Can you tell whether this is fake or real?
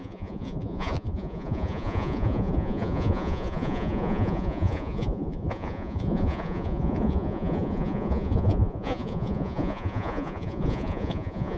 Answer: fake